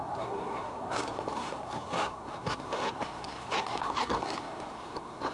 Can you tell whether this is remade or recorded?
remade